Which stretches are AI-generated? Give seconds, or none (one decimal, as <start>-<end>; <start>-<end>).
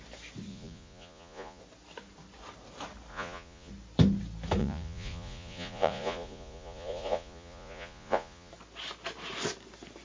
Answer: 0.5-1.6; 3.1-3.7; 4.6-8.5